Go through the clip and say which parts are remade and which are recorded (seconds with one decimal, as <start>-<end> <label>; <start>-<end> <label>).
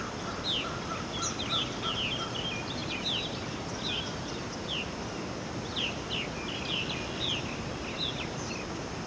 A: 0.0-9.1 recorded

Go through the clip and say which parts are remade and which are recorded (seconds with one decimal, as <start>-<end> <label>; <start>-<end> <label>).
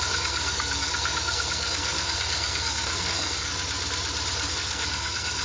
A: 0.0-3.5 remade; 3.5-4.5 recorded; 4.5-5.4 remade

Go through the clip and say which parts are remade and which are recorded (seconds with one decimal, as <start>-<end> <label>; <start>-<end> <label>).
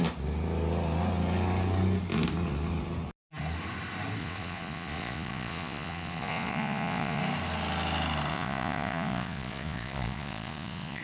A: 0.0-4.2 recorded; 4.2-7.2 remade; 7.2-8.3 recorded; 8.3-11.0 remade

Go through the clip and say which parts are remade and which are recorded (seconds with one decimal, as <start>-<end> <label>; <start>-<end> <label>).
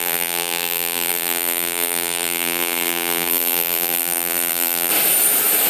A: 0.0-4.9 remade; 4.9-5.7 recorded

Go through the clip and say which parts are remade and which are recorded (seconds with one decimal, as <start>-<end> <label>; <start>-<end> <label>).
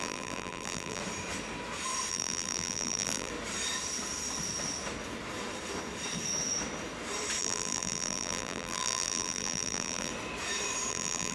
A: 0.0-1.0 remade; 1.0-2.1 recorded; 2.1-3.3 remade; 3.3-7.4 recorded; 7.4-10.1 remade; 10.1-10.9 recorded; 10.9-11.3 remade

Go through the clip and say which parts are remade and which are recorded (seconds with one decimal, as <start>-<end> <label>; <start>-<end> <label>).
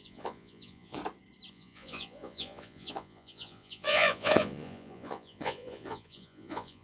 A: 0.0-1.0 remade; 1.0-1.5 recorded; 1.5-6.8 remade